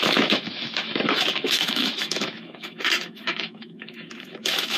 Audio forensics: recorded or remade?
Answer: remade